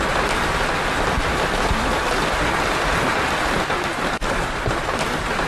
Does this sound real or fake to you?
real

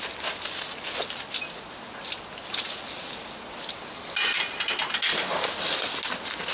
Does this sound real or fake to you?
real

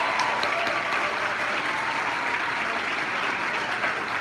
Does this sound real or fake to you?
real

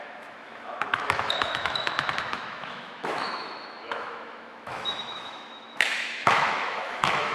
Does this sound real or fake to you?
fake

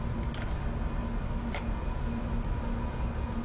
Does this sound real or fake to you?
real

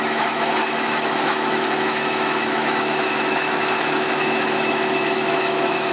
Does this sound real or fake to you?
fake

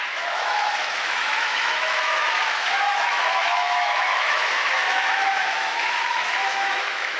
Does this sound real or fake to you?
fake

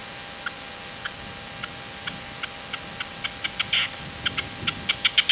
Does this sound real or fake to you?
real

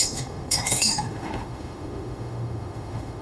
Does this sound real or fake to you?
fake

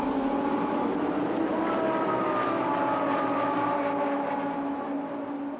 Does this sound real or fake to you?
real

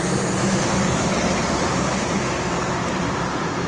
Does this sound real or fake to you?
real